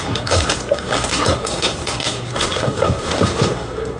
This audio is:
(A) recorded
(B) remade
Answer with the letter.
B